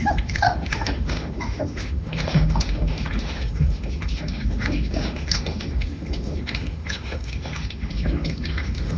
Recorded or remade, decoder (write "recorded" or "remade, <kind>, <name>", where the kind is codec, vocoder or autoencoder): remade, autoencoder, DAC-VAE